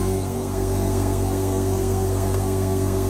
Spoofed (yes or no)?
yes